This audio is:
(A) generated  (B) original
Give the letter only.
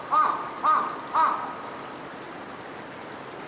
B